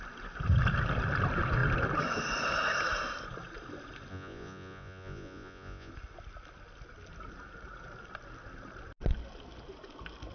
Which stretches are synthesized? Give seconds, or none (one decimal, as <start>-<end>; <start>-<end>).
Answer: 4.1-5.9

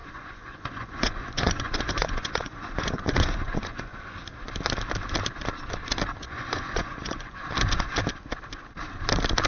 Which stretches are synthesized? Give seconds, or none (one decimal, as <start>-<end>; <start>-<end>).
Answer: 0.0-4.0; 6.2-7.4